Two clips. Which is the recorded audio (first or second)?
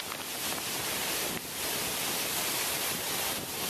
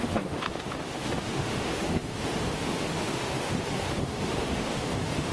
first